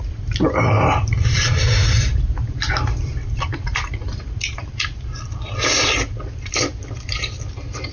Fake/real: fake